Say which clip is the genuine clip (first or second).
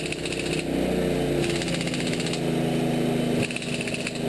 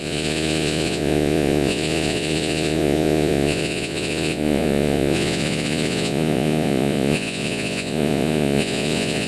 first